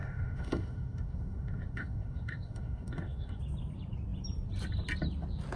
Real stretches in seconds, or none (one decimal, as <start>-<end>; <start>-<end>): 3.4-5.6